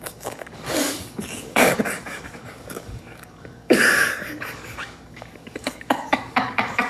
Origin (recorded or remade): remade